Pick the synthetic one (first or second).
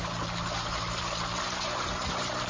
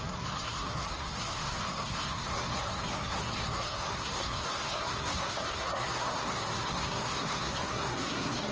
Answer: second